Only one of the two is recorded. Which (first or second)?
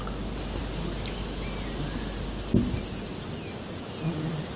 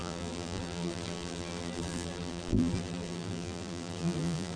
first